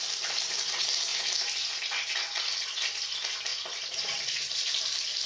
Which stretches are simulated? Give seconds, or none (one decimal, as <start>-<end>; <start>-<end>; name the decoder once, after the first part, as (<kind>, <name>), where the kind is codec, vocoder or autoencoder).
3.5-4.8 (vocoder, BigVGAN v2)